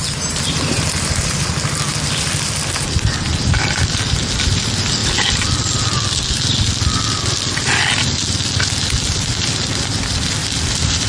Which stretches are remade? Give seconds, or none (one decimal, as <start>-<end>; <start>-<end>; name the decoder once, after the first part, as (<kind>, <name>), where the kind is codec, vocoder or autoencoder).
0.0-0.7 (vocoder, BigVGAN v2); 10.4-11.1